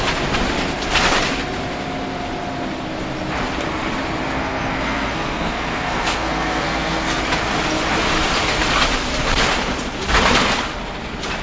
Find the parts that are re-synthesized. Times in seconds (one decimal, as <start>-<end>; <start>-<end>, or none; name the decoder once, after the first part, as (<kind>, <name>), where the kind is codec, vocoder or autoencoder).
4.4-7.2 (codec, SNAC)